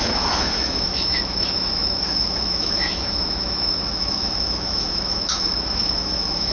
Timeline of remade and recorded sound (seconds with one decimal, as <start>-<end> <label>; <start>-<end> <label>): 0.0-6.5 remade